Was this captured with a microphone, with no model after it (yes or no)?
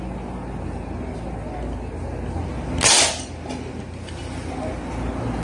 yes